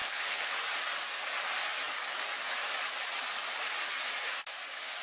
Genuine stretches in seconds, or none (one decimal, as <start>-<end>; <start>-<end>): 0.6-5.0